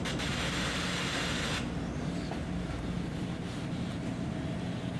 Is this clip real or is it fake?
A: real